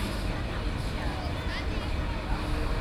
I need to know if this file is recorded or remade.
recorded